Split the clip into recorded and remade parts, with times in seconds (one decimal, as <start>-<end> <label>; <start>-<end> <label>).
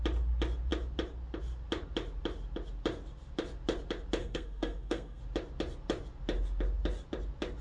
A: 0.0-4.2 recorded; 4.2-5.2 remade; 5.2-7.6 recorded